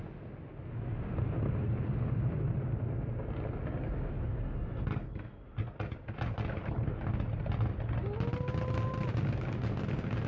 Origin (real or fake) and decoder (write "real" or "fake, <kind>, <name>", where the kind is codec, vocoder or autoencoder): real